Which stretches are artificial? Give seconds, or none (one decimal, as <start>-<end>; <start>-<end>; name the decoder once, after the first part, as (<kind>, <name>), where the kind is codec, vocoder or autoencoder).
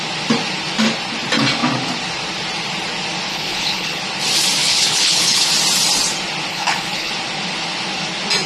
3.3-4.0 (codec, HILCodec); 4.6-5.5; 6.5-7.1